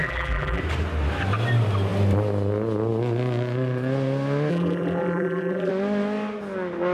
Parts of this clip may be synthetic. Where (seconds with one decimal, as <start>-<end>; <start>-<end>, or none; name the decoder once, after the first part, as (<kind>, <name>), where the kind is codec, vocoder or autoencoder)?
0.0-0.6 (vocoder, BigVGAN v2); 4.5-5.7